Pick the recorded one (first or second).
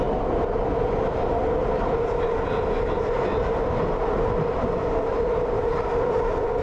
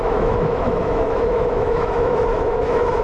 first